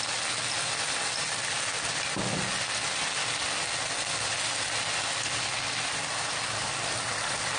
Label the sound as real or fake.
real